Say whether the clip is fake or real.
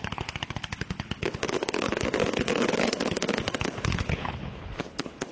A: fake